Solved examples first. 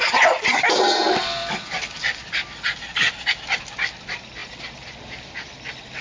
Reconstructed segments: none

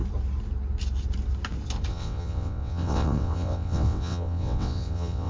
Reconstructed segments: 1.9-5.3